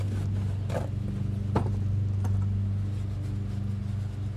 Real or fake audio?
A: real